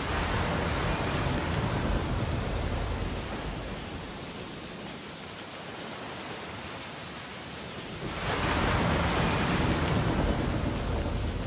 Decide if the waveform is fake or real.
real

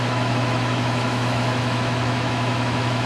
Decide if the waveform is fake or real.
fake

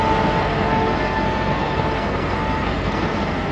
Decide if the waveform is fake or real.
fake